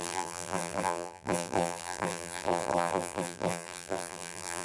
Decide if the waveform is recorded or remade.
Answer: remade